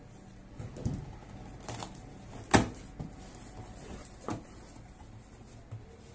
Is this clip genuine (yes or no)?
yes